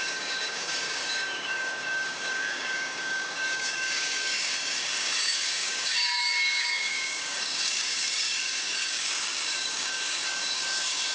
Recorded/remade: remade